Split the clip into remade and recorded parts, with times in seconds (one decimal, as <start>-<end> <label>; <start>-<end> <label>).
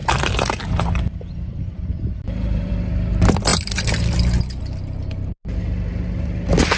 0.0-2.7 remade; 2.7-3.5 recorded; 3.5-4.6 remade; 4.6-6.8 recorded